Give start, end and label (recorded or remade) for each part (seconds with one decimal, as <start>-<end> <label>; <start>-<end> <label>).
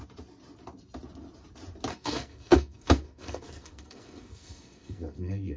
0.0-1.9 recorded; 1.9-5.6 remade